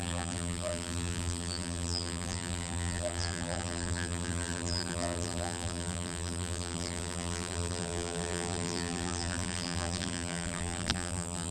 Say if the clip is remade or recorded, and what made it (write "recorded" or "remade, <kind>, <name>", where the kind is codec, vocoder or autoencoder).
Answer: remade, vocoder, BigVGAN v2